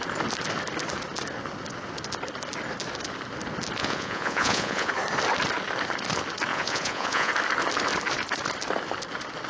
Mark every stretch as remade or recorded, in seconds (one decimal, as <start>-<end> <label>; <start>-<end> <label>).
0.0-3.8 recorded; 3.8-4.9 remade; 4.9-6.5 recorded; 6.5-7.3 remade; 7.3-9.5 recorded